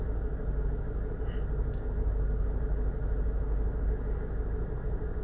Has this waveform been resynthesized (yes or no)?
no